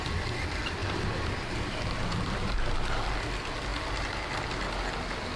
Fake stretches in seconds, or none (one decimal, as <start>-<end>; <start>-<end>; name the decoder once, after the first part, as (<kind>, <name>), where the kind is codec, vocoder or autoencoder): 0.8-2.7 (vocoder, BigVGAN v2)